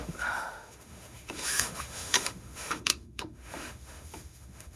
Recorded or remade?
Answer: remade